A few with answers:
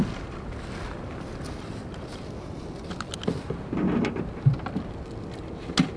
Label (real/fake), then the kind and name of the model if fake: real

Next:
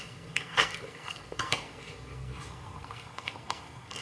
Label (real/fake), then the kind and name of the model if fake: fake, codec, SNAC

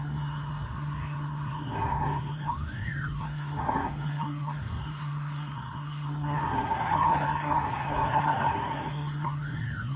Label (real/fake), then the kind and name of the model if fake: fake, codec, SNAC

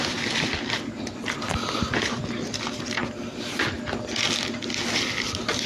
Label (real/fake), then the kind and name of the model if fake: real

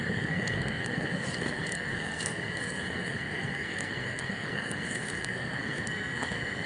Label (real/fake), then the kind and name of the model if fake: fake, codec, SNAC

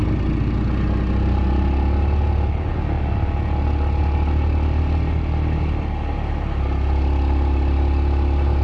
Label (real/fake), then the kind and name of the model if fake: real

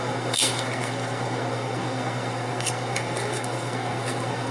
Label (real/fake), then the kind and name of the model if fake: fake, codec, SNAC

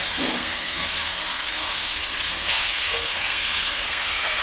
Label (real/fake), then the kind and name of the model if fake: fake, codec, SNAC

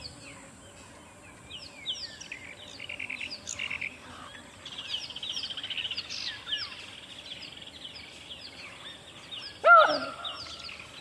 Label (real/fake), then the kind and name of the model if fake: real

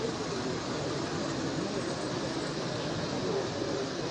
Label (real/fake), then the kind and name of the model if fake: real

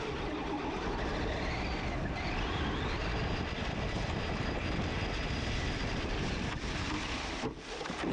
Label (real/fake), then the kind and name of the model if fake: real